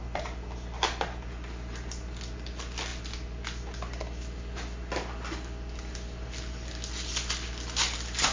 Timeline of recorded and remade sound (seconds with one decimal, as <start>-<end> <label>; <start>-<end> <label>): 0.0-8.3 recorded